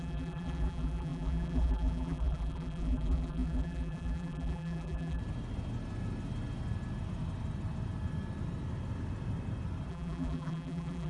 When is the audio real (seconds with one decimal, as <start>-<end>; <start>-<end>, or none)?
5.2-9.9